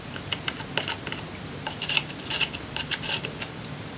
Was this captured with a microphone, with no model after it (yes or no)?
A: yes